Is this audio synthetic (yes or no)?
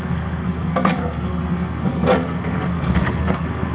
yes